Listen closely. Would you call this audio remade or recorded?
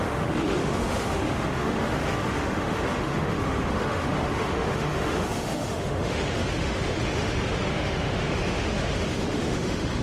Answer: remade